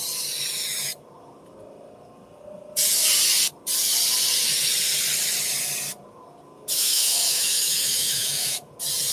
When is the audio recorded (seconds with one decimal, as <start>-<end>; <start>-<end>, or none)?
0.0-6.8; 8.7-9.1